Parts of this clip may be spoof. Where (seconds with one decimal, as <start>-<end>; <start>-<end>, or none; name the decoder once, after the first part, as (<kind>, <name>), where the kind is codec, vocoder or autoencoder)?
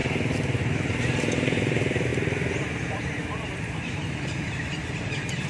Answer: 0.0-5.5 (vocoder, BigVGAN v2)